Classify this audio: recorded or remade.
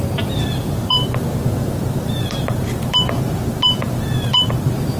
remade